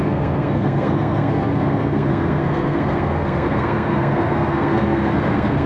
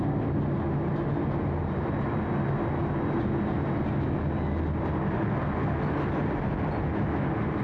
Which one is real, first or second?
second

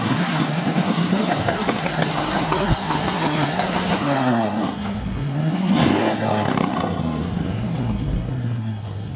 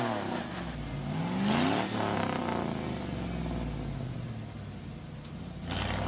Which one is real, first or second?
second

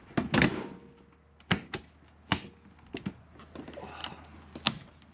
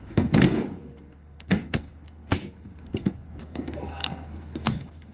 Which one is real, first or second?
first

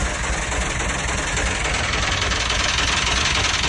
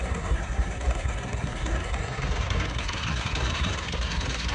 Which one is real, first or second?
first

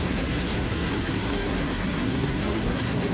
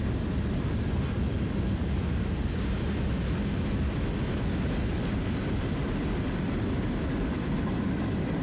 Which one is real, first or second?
second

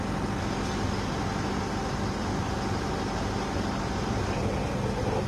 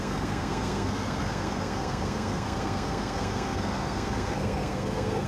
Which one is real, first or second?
first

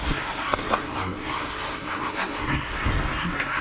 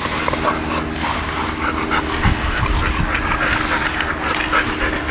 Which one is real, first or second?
second